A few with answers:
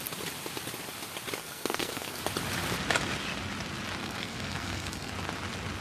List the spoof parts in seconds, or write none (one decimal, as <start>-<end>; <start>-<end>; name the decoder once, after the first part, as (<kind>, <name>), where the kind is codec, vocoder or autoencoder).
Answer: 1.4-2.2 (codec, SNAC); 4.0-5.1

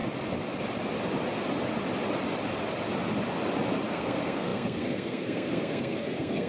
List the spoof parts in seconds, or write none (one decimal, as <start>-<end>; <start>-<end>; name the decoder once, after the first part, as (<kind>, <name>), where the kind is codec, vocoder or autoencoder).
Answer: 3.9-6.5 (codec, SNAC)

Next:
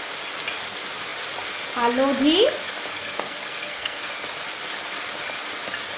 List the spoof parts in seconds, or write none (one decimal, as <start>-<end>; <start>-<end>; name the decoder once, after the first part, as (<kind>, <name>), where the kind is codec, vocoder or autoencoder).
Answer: 2.9-4.1 (codec, SNAC)

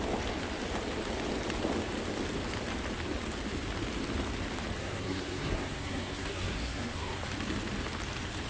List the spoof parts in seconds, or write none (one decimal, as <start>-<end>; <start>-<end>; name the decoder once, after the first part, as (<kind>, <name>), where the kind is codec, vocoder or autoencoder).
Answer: 4.8-7.2 (codec, SNAC)

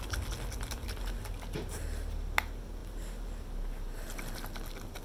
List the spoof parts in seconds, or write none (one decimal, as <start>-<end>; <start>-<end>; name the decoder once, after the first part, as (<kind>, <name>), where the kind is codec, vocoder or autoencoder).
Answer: none